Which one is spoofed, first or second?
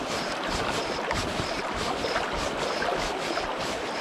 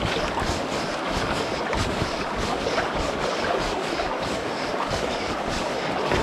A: second